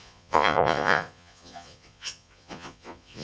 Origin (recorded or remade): remade